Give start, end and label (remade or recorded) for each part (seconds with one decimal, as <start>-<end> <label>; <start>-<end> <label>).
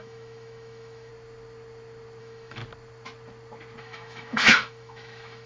0.0-1.1 remade; 1.1-2.2 recorded; 2.2-2.6 remade; 2.6-3.8 recorded; 3.8-5.5 remade